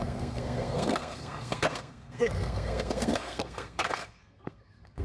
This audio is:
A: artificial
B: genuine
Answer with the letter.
A